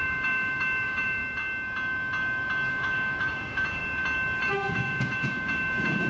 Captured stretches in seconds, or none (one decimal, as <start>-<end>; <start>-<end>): 1.2-2.7; 3.8-4.7